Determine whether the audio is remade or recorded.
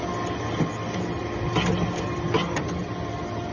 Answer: recorded